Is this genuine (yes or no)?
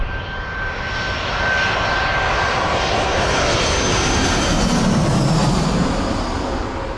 yes